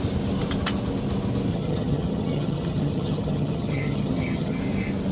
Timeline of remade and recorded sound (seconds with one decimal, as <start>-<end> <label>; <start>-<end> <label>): 0.0-1.5 recorded; 1.5-4.6 remade; 4.6-5.1 recorded